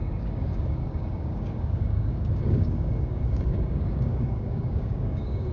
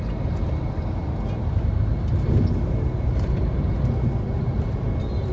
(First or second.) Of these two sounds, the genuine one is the second